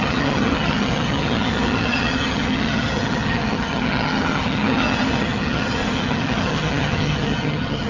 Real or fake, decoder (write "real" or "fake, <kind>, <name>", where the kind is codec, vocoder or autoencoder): fake, vocoder, HiFi-GAN